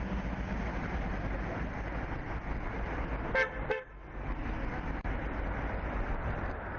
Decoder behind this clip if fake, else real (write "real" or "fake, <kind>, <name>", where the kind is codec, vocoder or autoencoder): real